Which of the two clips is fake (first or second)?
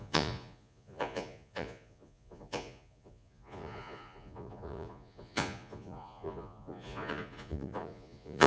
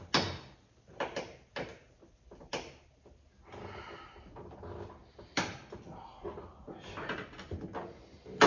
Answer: first